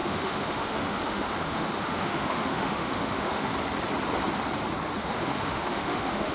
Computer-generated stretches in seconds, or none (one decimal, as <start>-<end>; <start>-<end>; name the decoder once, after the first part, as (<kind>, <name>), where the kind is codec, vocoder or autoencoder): 0.0-3.5 (autoencoder, DAC-VAE); 5.0-6.3